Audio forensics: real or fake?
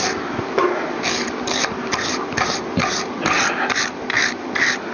real